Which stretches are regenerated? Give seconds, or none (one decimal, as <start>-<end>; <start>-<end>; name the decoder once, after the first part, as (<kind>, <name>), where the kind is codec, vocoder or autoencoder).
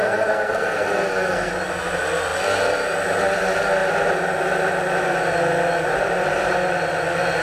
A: 0.0-1.5 (codec, SNAC)